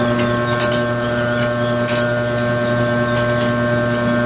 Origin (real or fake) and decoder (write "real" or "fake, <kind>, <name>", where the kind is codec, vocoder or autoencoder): real